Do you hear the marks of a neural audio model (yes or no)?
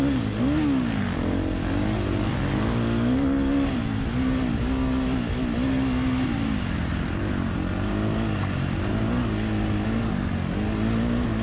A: no